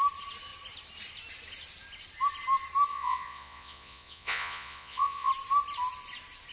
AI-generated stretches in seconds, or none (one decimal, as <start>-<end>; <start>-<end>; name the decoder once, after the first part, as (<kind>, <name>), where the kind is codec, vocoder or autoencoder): 2.9-5.3 (vocoder, Vocos)